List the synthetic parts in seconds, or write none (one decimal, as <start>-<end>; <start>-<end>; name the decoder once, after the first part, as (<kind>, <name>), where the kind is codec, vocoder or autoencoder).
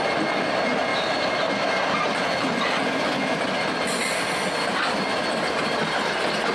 none